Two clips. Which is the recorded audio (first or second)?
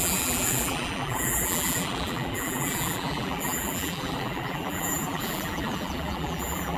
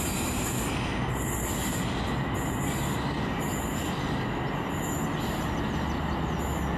second